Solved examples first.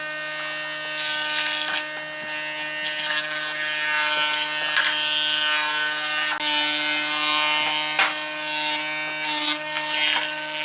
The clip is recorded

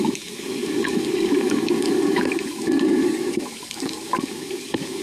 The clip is remade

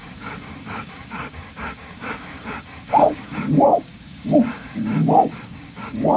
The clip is remade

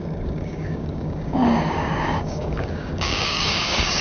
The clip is remade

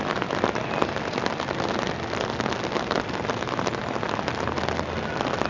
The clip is recorded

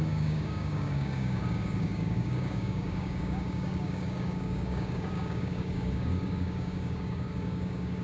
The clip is remade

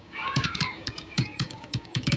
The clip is remade